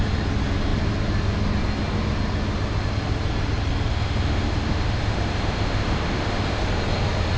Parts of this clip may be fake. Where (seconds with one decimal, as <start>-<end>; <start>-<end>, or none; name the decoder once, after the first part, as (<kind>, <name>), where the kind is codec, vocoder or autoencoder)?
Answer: 3.9-6.6 (autoencoder, DAC-VAE)